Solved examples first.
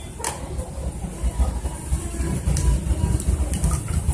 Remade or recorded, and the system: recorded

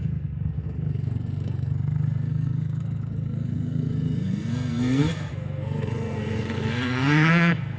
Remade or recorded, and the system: remade, codec, SNAC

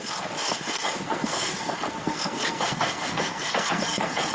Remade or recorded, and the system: remade, codec, SNAC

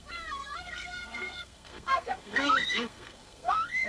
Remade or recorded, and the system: remade, codec, SNAC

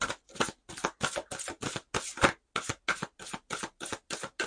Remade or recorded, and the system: recorded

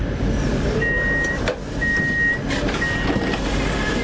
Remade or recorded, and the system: recorded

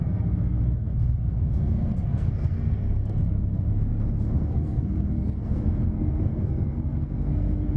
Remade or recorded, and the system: remade, codec, SNAC